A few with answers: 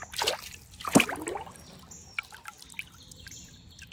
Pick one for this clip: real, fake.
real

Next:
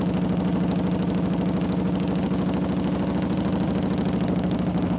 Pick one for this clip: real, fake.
real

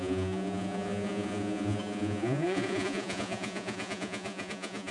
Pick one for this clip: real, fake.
fake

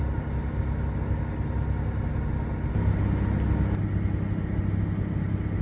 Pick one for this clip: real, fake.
real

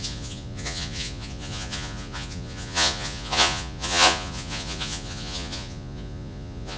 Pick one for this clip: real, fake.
fake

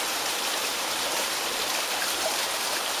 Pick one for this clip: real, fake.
fake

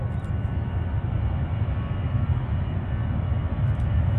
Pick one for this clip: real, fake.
real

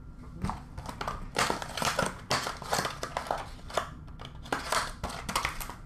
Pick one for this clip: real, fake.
real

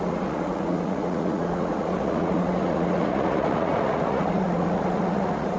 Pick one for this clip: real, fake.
fake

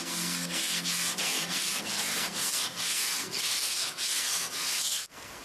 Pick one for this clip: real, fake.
fake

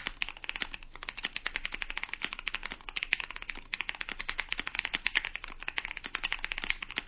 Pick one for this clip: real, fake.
real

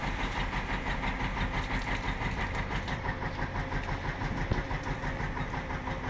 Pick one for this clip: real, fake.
real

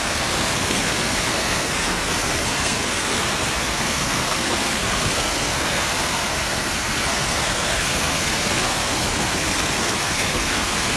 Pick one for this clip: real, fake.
fake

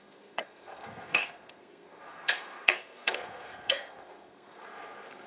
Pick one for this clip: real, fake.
fake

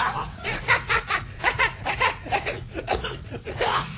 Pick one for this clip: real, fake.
fake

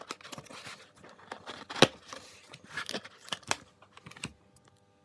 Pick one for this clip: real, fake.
real